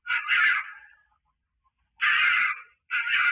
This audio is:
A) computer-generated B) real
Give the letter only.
A